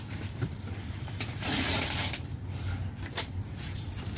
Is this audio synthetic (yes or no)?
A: yes